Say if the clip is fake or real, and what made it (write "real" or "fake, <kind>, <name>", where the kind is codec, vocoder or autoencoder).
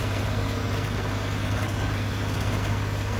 fake, codec, SNAC